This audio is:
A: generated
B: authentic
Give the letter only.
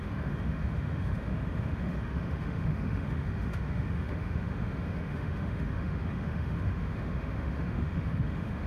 A